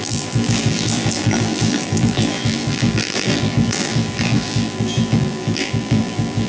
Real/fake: fake